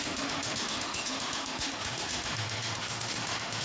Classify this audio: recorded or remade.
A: remade